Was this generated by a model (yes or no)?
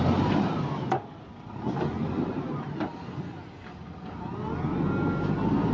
no